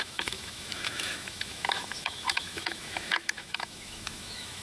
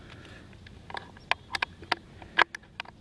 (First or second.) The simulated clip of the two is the first